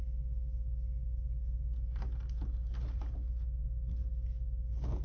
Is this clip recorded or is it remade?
recorded